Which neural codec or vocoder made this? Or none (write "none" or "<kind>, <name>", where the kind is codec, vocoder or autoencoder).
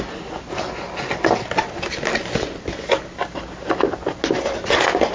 none